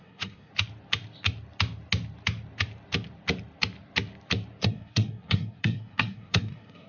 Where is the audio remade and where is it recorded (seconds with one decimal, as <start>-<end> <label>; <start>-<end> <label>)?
0.0-0.5 remade; 0.5-4.6 recorded; 4.6-6.9 remade